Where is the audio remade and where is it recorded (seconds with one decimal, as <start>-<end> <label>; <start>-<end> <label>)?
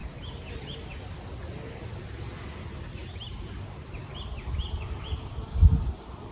0.0-0.5 remade; 0.5-3.0 recorded; 3.0-4.0 remade; 4.0-6.3 recorded